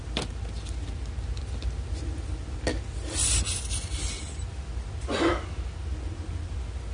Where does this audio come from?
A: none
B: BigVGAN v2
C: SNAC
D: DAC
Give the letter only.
A